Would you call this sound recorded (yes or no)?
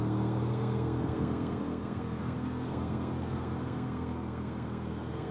no